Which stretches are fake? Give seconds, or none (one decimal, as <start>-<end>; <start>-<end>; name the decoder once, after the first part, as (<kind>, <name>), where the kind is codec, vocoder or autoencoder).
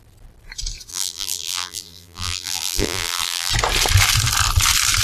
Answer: 0.9-3.5 (vocoder, BigVGAN v2)